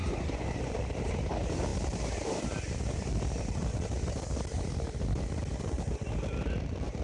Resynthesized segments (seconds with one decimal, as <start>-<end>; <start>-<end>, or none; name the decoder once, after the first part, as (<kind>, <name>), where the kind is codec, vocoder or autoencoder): 0.0-0.7 (vocoder, Vocos)